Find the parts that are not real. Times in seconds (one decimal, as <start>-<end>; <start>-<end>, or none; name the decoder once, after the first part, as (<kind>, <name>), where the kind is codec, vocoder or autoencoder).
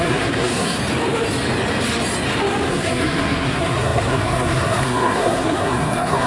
0.0-0.8 (codec, SNAC); 2.7-6.3